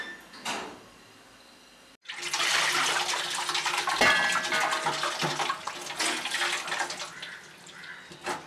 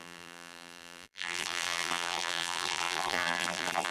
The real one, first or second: first